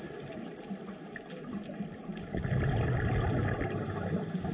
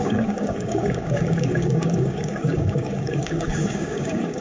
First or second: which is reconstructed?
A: second